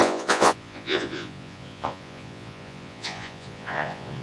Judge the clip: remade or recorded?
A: remade